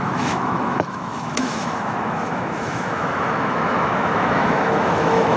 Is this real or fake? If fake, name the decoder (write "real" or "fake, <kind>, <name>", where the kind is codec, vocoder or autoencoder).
fake, autoencoder, DAC-VAE